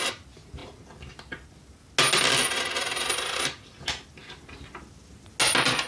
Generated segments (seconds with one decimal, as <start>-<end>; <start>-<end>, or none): none